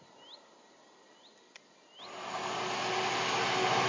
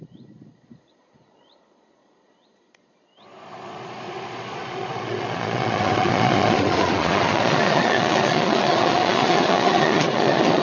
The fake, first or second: second